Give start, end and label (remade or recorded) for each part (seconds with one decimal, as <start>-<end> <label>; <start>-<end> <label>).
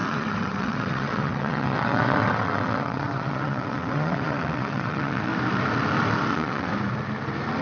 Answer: 0.0-5.3 remade; 5.3-6.3 recorded; 6.3-6.7 remade; 6.7-7.6 recorded